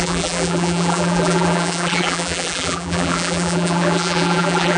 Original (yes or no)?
no